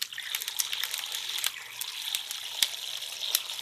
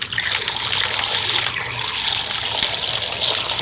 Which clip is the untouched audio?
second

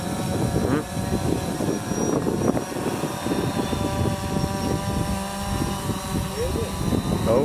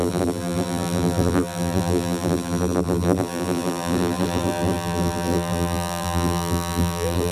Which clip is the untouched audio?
first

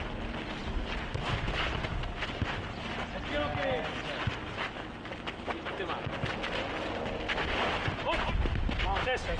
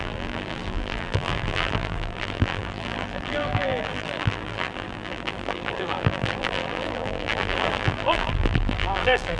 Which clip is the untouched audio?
first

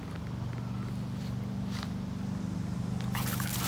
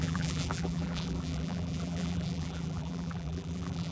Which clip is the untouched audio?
first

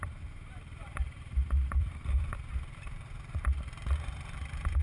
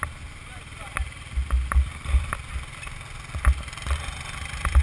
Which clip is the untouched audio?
second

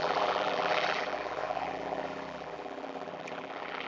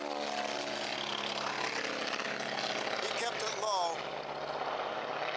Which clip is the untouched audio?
second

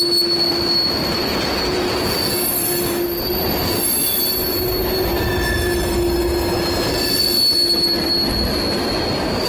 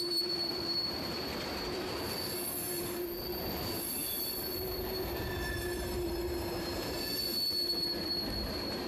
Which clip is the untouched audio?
first